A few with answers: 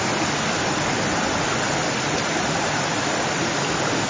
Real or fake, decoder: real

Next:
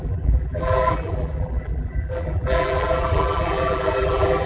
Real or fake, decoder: fake, vocoder, BigVGAN v2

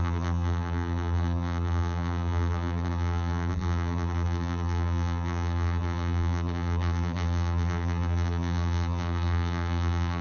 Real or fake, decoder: fake, vocoder, BigVGAN v2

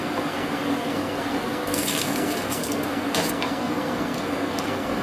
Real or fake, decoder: fake, codec, SNAC